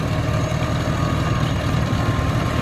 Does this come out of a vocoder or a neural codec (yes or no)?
no